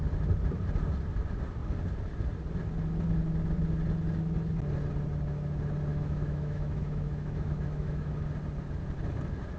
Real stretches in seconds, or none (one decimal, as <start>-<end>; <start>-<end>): 0.0-5.9; 8.1-9.6